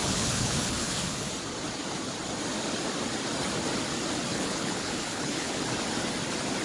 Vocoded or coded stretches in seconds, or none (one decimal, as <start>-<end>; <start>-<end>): 0.0-1.3; 4.3-5.6